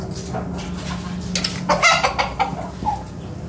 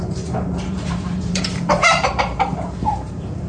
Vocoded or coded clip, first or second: second